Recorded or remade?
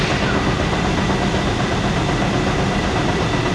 recorded